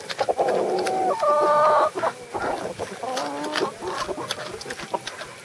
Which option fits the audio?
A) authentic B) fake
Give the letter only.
A